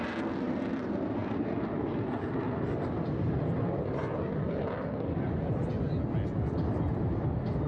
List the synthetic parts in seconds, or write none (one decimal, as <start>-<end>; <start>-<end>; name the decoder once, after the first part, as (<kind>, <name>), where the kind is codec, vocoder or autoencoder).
none